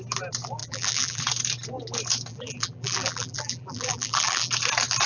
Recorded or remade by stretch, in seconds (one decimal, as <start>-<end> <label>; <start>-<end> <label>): 0.0-0.6 recorded; 0.6-1.2 remade; 1.2-2.3 recorded; 2.3-4.5 remade; 4.5-5.1 recorded